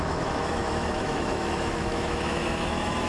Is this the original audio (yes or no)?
no